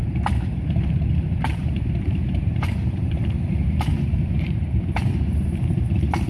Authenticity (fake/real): fake